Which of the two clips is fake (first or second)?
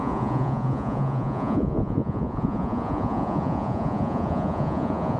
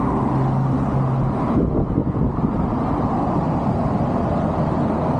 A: first